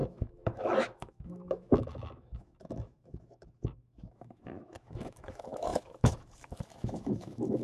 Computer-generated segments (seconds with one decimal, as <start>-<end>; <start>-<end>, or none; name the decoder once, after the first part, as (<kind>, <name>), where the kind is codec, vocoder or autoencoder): 0.0-7.6 (autoencoder, DAC-VAE)